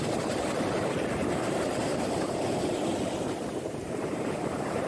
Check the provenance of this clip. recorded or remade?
remade